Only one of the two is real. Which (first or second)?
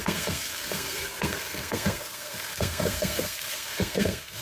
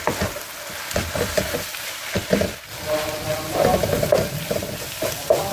second